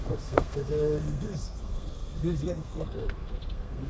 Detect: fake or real fake